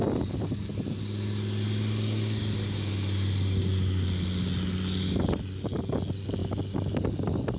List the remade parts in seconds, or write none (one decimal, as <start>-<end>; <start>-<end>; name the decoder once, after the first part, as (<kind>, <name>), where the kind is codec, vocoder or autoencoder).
none

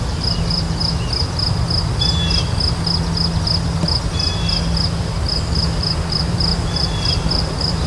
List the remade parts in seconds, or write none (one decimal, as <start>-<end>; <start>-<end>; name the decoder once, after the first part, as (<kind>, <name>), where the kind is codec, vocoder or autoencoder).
0.0-0.8 (vocoder, BigVGAN v2); 5.0-7.9

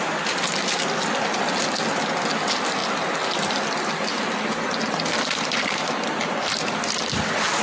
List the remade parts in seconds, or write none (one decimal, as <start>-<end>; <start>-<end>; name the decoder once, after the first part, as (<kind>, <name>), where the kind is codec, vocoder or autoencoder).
none

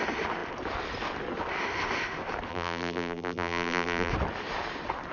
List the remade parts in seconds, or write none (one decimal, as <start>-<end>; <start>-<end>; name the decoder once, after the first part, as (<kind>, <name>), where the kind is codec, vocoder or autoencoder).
2.5-4.1 (vocoder, BigVGAN v2)

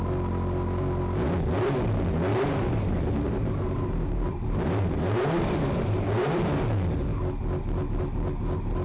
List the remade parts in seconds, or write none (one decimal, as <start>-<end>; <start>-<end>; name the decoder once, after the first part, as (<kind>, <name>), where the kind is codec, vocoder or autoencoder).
2.3-6.4 (vocoder, BigVGAN v2)

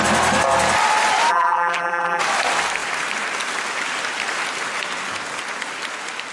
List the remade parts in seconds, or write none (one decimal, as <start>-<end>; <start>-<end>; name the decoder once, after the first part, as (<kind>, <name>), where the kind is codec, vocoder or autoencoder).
1.3-2.2 (vocoder, BigVGAN v2)

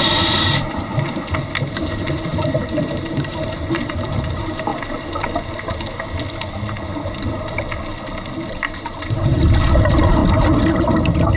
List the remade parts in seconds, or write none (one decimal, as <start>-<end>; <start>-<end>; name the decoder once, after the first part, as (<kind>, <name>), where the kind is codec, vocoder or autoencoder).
0.0-0.9 (vocoder, BigVGAN v2); 1.7-4.7; 8.5-10.2; 10.8-11.4